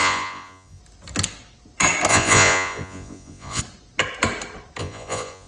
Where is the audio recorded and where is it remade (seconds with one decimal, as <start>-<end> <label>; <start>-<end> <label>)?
0.0-0.8 remade; 0.8-2.1 recorded; 2.1-3.6 remade; 3.6-4.8 recorded; 4.8-5.5 remade